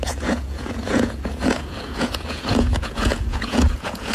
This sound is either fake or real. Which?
fake